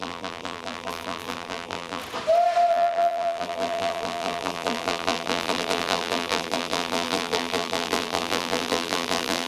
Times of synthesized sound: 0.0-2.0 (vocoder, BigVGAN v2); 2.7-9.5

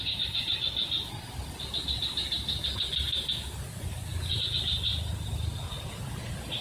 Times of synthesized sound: none